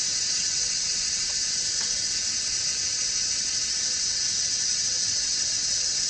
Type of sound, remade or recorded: remade